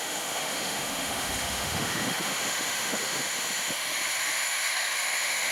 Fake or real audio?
fake